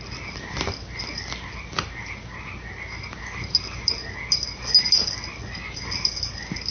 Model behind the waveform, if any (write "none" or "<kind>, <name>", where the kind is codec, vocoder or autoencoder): none